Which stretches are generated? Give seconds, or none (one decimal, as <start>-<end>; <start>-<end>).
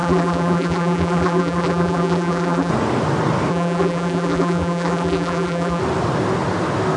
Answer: 0.0-2.7; 3.5-5.8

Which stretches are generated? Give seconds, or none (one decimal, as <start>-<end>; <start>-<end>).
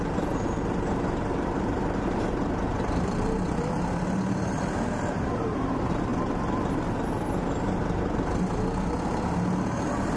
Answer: 0.0-10.2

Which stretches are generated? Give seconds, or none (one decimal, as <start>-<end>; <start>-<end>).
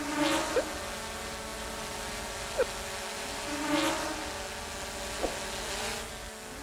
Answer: none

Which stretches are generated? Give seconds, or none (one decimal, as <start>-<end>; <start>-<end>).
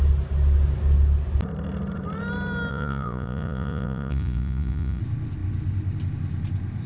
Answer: 2.7-5.0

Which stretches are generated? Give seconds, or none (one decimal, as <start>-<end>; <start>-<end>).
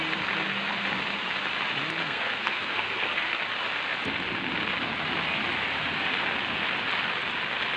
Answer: 2.0-3.4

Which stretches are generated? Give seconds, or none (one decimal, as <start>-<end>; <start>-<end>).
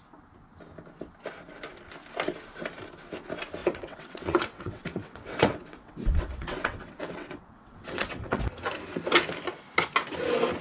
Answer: 3.6-8.4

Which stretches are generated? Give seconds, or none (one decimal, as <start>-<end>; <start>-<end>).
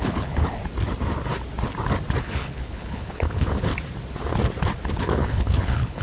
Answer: 0.0-0.6; 2.2-3.7; 5.0-6.0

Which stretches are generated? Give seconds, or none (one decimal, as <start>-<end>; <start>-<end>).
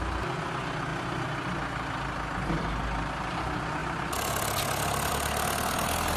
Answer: none